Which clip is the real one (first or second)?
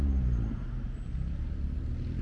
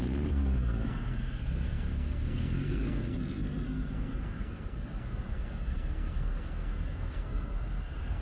first